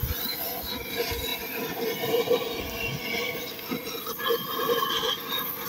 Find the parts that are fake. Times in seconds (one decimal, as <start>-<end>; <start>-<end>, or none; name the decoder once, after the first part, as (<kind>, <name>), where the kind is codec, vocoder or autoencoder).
none